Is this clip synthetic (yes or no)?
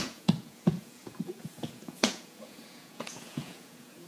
yes